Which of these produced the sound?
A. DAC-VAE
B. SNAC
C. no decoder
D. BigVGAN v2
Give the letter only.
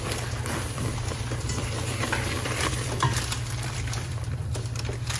D